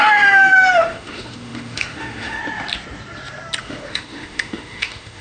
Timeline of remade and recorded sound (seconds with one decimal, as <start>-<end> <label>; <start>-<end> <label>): 0.0-2.4 remade; 2.4-3.6 recorded; 3.6-5.2 remade